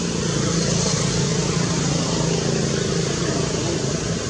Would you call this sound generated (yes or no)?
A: no